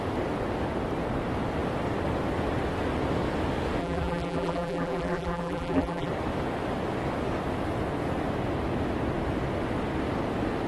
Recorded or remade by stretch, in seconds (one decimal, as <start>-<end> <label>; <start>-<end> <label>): 0.0-3.8 recorded; 3.8-6.1 remade; 6.1-10.7 recorded